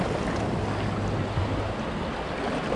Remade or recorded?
recorded